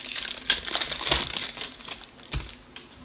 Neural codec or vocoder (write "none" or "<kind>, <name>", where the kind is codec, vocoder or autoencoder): none